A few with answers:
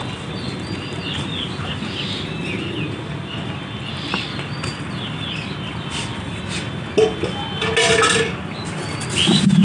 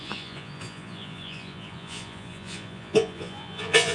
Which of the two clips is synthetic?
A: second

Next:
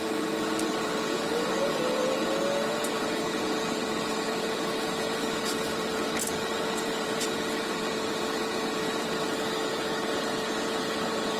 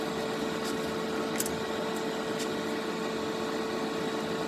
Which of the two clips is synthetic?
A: first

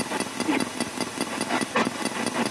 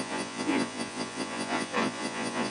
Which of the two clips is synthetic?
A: second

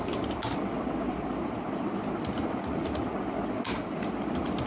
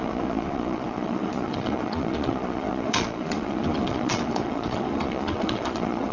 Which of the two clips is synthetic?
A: second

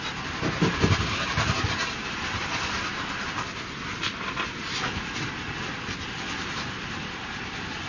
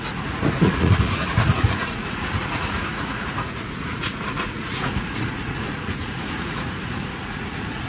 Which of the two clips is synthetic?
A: second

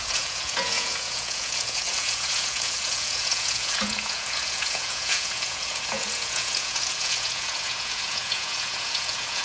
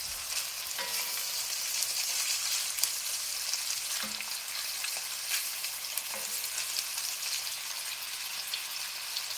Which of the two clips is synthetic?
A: first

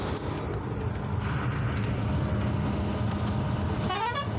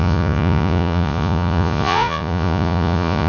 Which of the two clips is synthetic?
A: second